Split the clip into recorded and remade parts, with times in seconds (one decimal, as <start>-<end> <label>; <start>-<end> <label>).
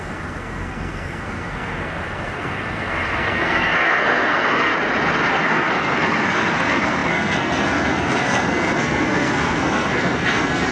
0.0-4.7 remade; 4.7-5.3 recorded; 5.3-10.7 remade